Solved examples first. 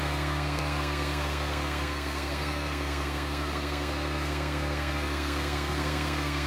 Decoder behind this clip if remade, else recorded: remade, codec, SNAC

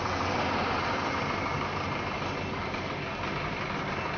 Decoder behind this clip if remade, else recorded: recorded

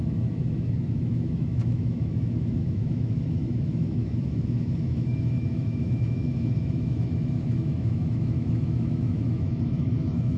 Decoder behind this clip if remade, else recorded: remade, autoencoder, DAC-VAE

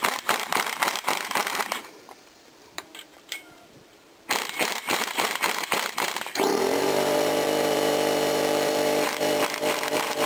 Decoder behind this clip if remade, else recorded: remade, vocoder, BigVGAN v2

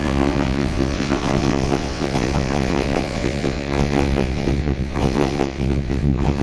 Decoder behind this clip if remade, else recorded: remade, vocoder, WaveNeXt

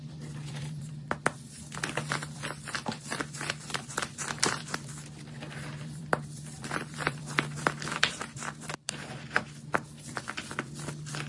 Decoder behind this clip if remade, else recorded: remade, vocoder, BigVGAN v2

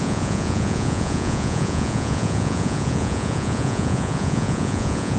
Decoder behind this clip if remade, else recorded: remade, vocoder, Vocos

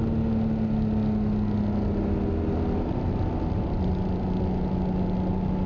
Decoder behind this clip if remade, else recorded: recorded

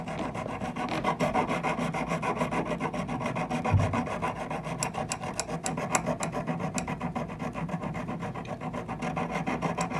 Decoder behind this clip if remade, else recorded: recorded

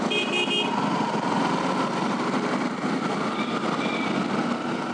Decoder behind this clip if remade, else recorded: recorded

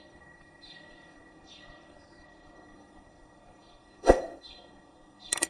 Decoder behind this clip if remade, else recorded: remade, codec, SNAC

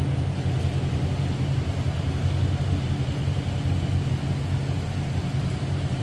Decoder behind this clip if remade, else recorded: recorded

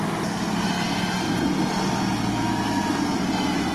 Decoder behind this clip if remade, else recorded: recorded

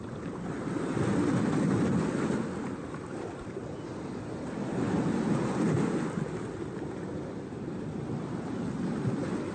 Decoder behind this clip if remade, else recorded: recorded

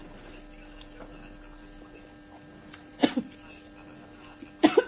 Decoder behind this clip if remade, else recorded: recorded